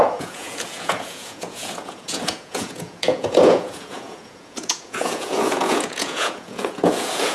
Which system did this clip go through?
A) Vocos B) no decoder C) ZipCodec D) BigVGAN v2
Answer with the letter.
A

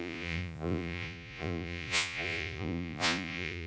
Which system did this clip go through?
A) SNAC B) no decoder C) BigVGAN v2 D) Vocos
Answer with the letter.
D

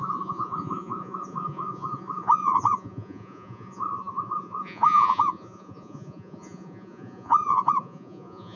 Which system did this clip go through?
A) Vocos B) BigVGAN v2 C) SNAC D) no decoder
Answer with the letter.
A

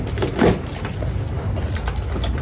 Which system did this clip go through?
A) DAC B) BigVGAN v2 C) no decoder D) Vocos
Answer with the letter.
C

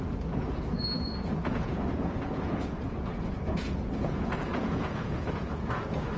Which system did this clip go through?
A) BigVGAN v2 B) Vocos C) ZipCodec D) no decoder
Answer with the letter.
B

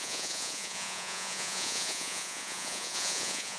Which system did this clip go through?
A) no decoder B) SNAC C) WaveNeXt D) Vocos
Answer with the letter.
D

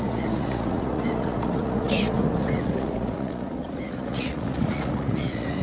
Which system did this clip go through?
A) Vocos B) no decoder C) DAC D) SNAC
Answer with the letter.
A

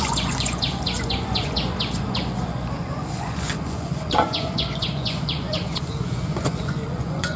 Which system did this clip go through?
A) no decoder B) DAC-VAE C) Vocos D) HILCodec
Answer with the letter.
C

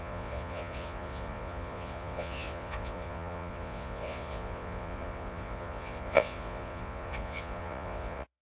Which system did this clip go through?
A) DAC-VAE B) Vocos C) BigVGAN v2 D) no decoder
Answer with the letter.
B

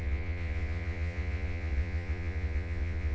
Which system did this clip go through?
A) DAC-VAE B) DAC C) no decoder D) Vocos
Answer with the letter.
D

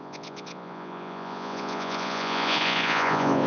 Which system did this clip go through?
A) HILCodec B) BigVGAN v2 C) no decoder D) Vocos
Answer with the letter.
D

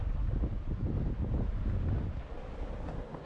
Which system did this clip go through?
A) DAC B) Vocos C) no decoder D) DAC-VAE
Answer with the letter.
C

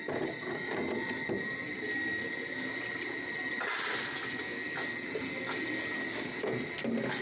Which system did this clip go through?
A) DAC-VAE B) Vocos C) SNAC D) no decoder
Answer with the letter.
D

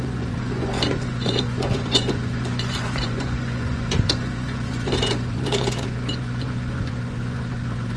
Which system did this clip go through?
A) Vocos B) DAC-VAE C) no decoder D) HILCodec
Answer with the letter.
A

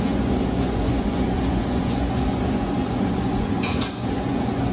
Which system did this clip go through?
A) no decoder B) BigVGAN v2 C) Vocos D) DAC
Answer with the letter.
C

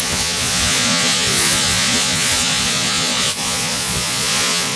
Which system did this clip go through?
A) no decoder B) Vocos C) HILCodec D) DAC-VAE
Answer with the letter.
B